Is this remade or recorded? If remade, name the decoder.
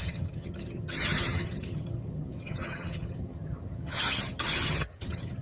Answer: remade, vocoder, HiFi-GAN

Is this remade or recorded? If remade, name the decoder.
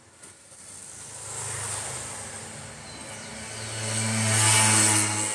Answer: recorded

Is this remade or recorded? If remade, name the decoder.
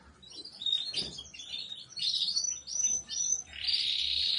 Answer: remade, vocoder, BigVGAN v2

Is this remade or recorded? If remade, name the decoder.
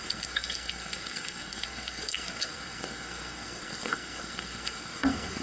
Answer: remade, codec, SNAC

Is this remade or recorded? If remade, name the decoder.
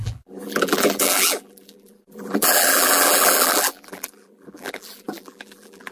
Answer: remade, vocoder, BigVGAN v2